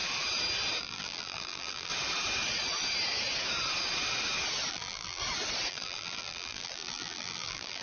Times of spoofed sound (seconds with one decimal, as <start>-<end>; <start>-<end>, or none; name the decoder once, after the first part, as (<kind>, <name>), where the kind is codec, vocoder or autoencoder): 0.8-1.9 (vocoder, BigVGAN v2); 4.7-5.2; 5.7-7.8